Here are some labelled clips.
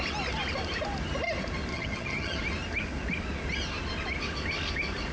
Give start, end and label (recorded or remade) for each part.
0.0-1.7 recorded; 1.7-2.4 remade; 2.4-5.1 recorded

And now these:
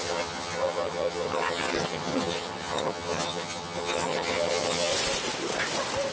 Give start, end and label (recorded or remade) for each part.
0.0-4.9 remade; 4.9-6.1 recorded

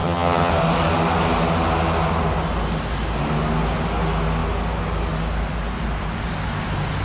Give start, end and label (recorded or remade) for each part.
0.0-0.5 remade; 0.5-7.0 recorded